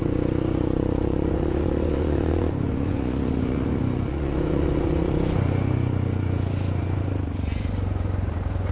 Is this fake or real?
fake